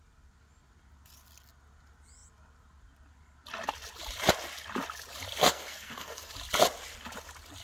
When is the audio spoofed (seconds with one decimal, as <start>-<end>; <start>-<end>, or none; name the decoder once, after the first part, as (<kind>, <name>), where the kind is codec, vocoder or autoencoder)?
5.4-6.3 (codec, SNAC)